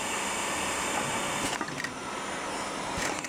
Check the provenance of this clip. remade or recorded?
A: recorded